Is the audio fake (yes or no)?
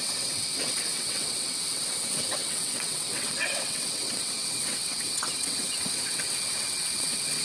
yes